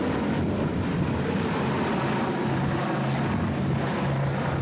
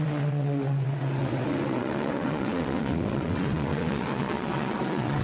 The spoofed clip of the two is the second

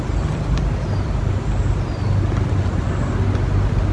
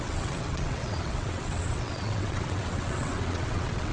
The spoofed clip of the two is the second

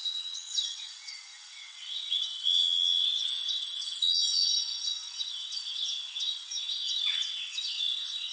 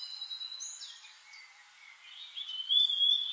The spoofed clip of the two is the first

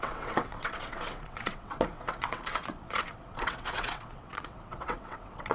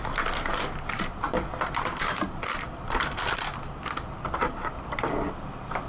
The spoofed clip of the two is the first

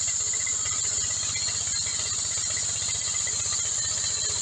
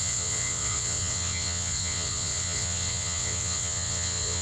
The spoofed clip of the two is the second